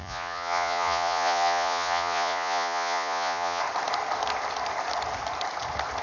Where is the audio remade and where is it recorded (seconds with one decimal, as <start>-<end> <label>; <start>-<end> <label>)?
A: 0.0-3.6 remade; 3.6-6.0 recorded